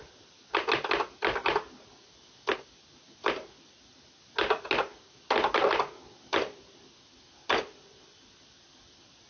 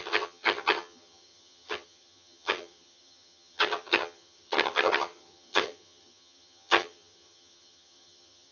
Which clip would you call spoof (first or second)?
second